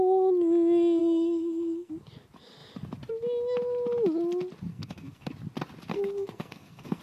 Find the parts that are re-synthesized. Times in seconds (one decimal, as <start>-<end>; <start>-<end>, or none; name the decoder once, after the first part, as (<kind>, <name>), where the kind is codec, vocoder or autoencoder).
1.0-1.9 (codec, SNAC); 4.7-5.3; 5.9-7.0